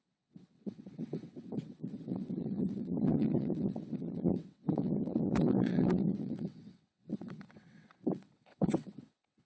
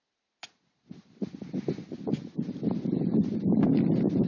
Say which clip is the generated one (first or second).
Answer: first